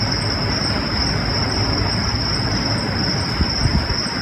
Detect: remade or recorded recorded